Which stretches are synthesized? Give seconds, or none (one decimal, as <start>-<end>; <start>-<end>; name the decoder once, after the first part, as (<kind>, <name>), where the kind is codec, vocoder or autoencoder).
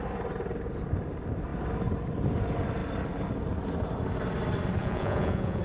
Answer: 4.8-5.6 (vocoder, Vocos)